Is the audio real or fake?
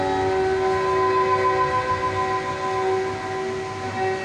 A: real